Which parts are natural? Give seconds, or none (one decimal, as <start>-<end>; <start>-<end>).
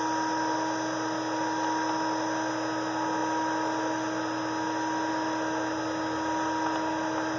0.0-7.4